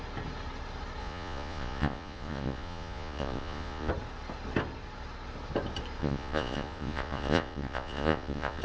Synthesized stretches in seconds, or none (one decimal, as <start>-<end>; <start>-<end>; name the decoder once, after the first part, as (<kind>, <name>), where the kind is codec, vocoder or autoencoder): 1.0-3.9 (vocoder, Vocos); 6.0-8.6